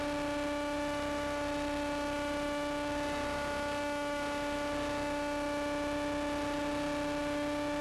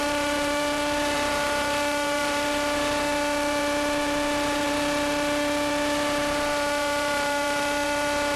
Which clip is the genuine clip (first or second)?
first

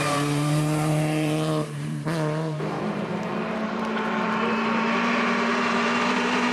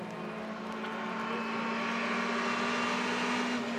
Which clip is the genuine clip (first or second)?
second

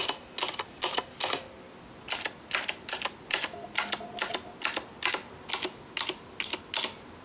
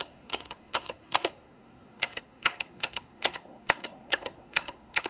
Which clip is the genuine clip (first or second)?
first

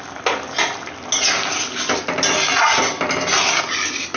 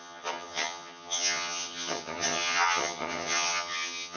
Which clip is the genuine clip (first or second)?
first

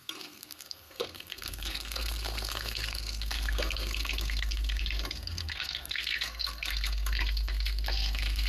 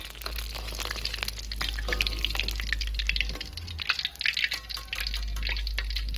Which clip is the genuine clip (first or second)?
second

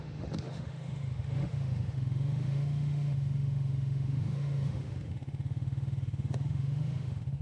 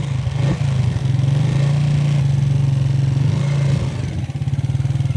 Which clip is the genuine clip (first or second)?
second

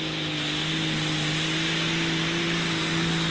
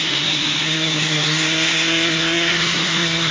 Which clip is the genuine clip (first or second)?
first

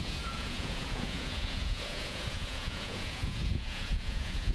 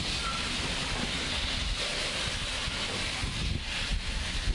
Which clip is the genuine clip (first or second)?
second